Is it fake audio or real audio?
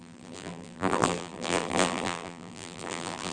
fake